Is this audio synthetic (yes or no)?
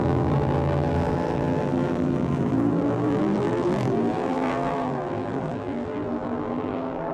yes